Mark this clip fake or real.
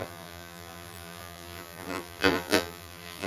fake